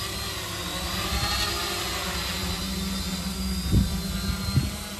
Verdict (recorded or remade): recorded